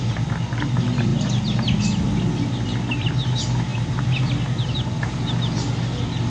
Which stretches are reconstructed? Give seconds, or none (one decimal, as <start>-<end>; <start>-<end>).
none